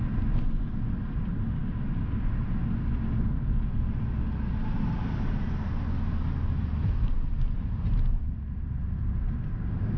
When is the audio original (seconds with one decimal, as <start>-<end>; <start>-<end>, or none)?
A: 0.0-10.0